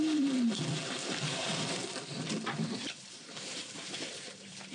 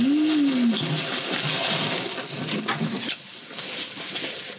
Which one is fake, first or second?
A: first